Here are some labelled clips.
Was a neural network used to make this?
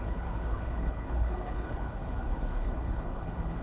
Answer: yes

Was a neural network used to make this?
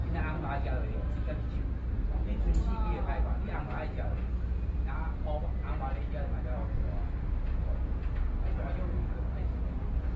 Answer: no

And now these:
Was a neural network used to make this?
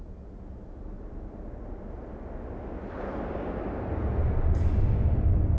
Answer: no